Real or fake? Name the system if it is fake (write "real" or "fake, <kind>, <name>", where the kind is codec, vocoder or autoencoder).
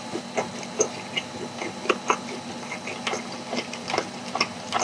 real